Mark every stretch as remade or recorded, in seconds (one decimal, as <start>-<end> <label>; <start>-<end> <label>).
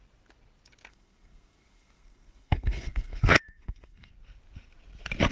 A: 0.0-0.9 recorded; 0.9-4.1 remade; 4.1-5.3 recorded